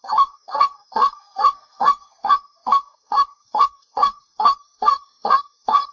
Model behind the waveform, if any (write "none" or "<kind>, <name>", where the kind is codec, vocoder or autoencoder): codec, SNAC